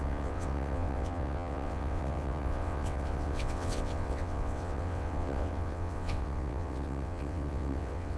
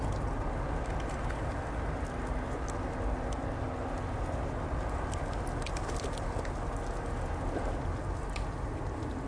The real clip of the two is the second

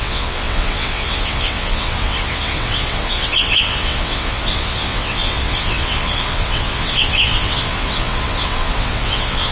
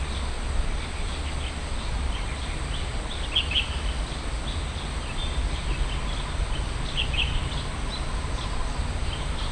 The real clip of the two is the second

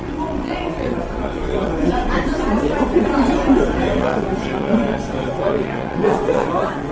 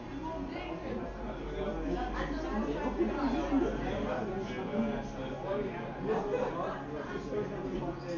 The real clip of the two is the second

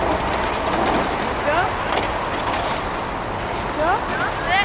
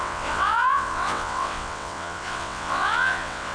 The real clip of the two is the first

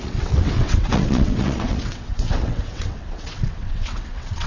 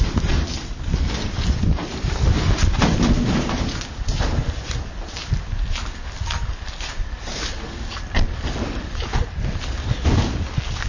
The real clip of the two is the second